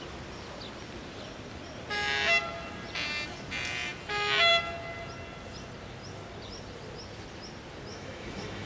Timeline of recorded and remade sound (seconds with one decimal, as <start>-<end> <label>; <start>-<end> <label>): 0.0-7.9 recorded; 7.9-8.7 remade